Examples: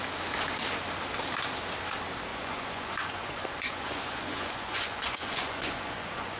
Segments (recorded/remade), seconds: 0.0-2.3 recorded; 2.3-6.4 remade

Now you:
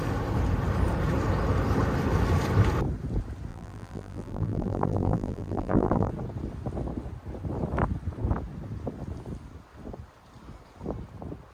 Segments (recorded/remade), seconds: 0.0-3.5 recorded; 3.5-6.1 remade; 6.1-11.5 recorded

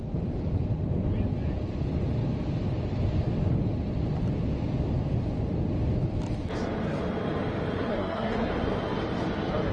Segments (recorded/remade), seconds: 0.0-7.9 recorded; 7.9-8.5 remade; 8.5-9.7 recorded

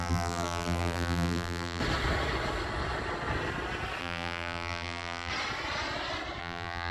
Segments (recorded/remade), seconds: 0.0-1.8 remade; 1.8-4.0 recorded; 4.0-5.3 remade; 5.3-6.4 recorded; 6.4-6.9 remade

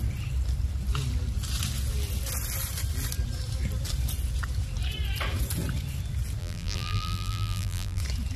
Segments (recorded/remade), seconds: 0.0-6.4 recorded; 6.4-8.0 remade; 8.0-8.4 recorded

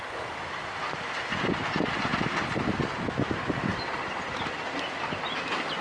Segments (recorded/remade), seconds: 0.0-5.8 recorded

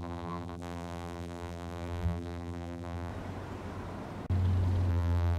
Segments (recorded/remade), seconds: 0.0-3.1 remade; 3.1-4.9 recorded; 4.9-5.4 remade